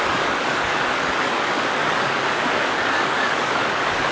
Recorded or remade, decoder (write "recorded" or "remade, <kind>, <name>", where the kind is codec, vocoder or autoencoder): remade, codec, DAC